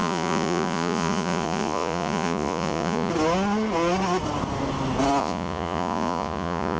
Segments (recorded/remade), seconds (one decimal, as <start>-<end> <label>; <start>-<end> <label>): 0.0-3.1 remade; 3.1-5.2 recorded; 5.2-6.8 remade